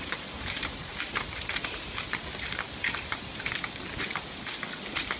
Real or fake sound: real